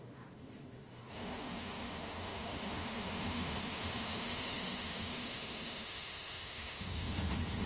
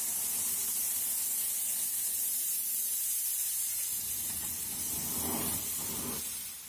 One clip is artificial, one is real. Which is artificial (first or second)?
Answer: first